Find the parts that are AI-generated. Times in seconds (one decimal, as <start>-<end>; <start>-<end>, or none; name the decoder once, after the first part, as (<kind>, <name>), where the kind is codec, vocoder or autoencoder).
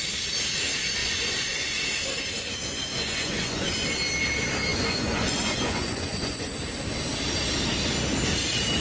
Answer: 1.0-1.8 (vocoder, Vocos); 2.9-3.7; 4.7-6.5